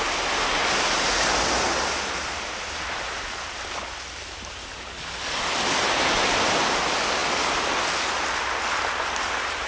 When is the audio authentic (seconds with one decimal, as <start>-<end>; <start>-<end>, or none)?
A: 0.0-9.7